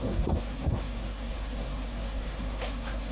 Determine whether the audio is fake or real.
fake